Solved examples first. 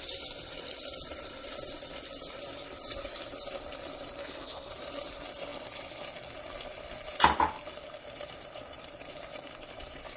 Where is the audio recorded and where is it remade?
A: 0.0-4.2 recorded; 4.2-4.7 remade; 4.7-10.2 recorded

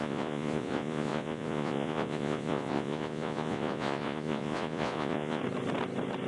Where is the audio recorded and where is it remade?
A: 0.0-5.4 remade; 5.4-6.3 recorded

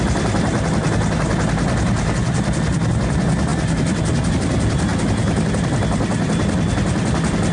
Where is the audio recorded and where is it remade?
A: 0.0-7.5 recorded

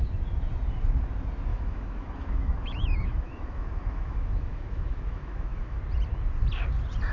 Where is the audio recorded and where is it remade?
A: 0.0-1.5 recorded; 1.5-5.8 remade; 5.8-7.1 recorded

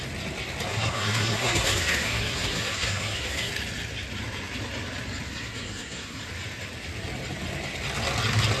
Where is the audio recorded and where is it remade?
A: 0.0-0.7 recorded; 0.7-3.5 remade; 3.5-5.3 recorded; 5.3-6.2 remade; 6.2-8.6 recorded